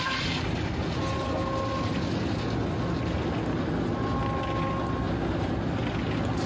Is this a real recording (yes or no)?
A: yes